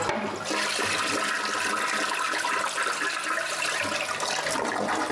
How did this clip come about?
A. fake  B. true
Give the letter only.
B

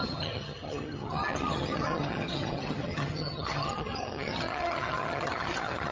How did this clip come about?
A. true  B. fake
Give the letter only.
B